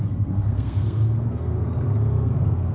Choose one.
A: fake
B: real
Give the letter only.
A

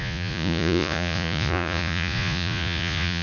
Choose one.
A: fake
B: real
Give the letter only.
A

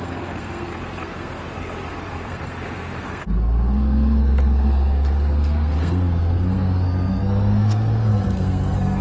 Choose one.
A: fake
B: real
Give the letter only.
A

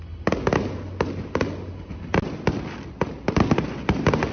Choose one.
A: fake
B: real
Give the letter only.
B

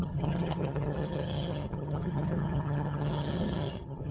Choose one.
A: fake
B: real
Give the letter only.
A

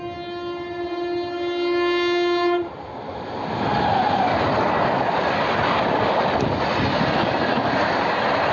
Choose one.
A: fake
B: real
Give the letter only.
B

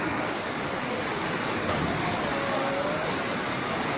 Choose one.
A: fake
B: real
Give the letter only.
A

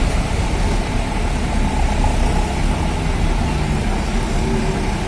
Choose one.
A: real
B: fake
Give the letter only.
A